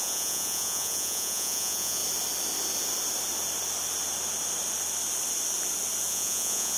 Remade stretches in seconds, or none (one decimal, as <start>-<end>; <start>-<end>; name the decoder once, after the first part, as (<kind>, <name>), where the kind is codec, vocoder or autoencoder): 0.0-2.0 (vocoder, Vocos); 6.1-6.8